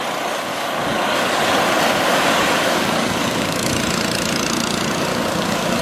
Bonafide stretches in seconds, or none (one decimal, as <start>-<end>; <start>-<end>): 0.0-0.5; 1.4-2.1; 3.7-5.1

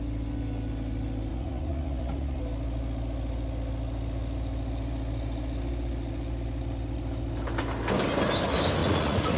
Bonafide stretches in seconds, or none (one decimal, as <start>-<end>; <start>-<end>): 0.0-1.3; 2.4-8.8

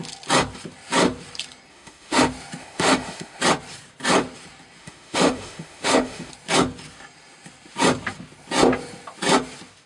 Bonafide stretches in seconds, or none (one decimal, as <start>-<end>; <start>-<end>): 0.0-1.7; 2.2-2.6; 3.4-4.8; 6.3-9.9

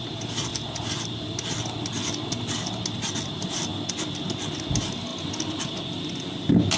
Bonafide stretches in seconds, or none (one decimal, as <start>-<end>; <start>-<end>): 0.0-6.8

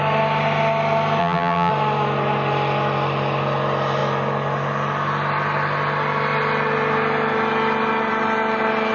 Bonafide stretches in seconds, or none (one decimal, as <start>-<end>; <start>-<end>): 0.0-1.2; 1.7-8.9

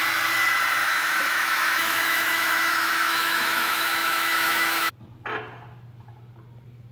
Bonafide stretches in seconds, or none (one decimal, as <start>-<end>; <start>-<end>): 0.0-0.8; 4.9-6.9

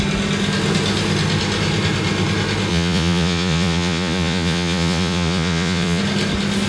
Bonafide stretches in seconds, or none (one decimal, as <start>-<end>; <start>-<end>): 0.0-2.7; 6.0-6.7

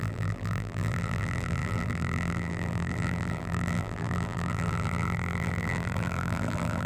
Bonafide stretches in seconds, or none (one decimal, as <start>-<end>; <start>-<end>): none